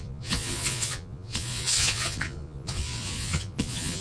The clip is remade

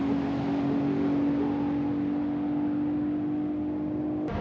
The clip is recorded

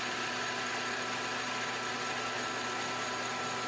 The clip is recorded